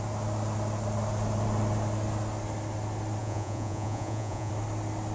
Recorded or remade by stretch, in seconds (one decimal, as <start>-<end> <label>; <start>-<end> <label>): 0.0-3.2 recorded; 3.2-4.5 remade; 4.5-5.1 recorded